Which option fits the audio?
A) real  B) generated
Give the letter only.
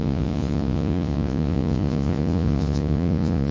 B